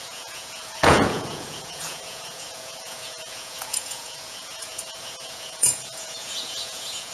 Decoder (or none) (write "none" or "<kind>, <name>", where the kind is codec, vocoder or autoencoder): vocoder, Vocos